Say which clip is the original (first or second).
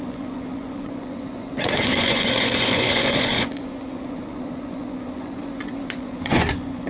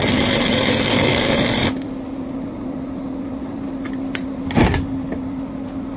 second